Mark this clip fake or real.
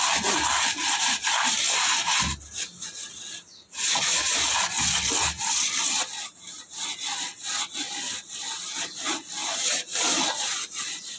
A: real